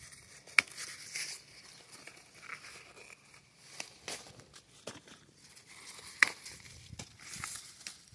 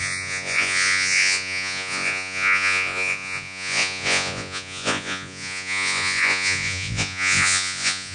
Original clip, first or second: first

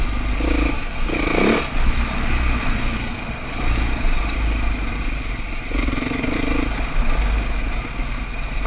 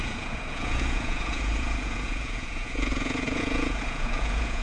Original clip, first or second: first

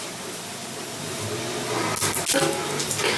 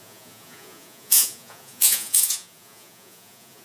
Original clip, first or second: first